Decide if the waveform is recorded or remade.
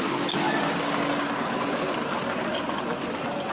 recorded